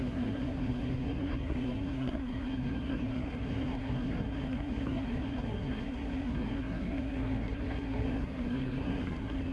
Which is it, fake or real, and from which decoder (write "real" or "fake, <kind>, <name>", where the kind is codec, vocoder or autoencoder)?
fake, codec, SNAC